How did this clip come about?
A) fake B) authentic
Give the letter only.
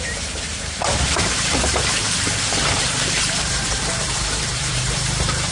A